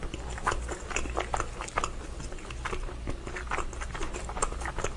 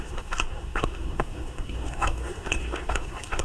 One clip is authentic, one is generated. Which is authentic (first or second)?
first